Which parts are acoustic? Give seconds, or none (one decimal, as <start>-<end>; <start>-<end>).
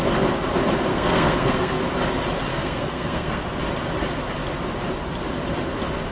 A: 0.0-0.9; 1.8-2.5; 3.4-6.1